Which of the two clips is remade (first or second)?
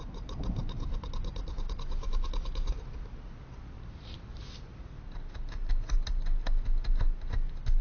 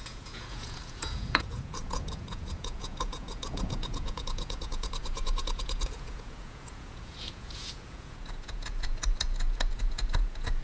second